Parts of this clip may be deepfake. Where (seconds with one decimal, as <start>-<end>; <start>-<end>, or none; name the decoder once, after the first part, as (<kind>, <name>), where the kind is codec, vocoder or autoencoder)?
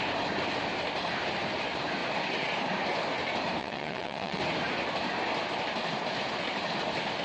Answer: 3.6-4.4 (vocoder, WaveNeXt)